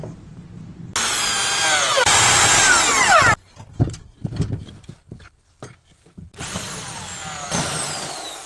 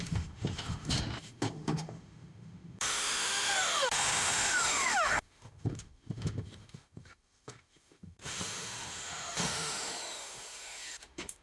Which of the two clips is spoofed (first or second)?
second